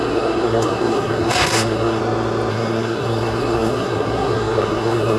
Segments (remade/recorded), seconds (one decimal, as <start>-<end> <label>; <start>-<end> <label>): 0.0-2.0 remade; 2.0-2.5 recorded; 2.5-5.2 remade